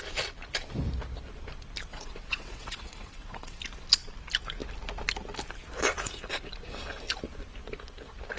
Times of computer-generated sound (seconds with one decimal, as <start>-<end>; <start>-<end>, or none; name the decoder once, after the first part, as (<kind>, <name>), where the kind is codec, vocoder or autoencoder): 1.9-3.6 (vocoder, WaveNeXt)